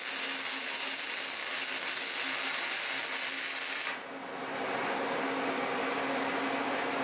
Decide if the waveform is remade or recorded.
recorded